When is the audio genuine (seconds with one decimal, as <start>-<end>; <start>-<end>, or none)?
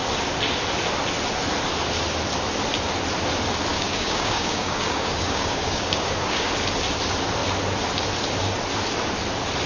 0.0-3.7; 6.5-9.7